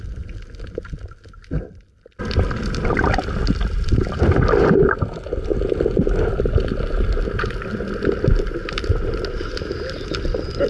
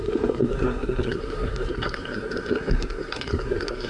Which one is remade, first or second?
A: second